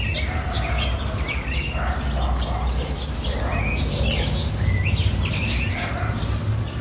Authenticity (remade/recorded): recorded